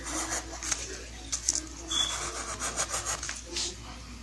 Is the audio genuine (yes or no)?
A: yes